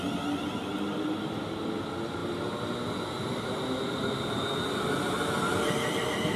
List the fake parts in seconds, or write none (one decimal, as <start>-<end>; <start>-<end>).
none

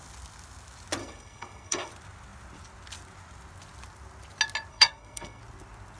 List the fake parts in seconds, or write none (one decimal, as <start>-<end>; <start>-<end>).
1.0-1.9; 4.7-5.4

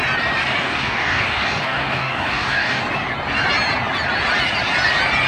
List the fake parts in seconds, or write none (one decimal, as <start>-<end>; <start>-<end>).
0.6-2.8

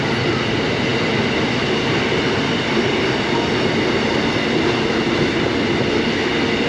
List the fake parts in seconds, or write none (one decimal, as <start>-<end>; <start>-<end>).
none